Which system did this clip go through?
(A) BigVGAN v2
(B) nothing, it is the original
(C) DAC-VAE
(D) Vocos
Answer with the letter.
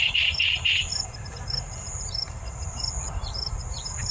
A